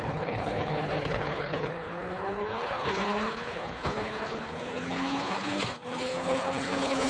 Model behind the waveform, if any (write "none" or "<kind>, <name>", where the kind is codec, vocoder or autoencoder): codec, HILCodec